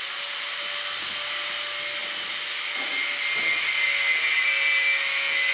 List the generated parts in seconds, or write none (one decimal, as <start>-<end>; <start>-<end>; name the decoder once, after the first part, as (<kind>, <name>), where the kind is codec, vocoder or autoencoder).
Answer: none